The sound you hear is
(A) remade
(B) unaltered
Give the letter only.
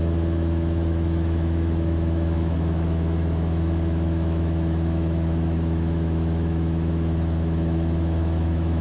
A